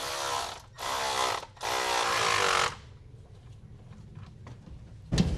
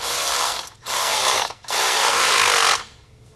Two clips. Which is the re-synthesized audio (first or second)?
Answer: second